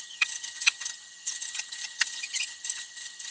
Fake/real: fake